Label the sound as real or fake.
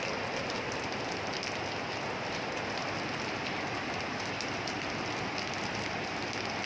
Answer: real